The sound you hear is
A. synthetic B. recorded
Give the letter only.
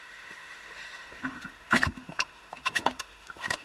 A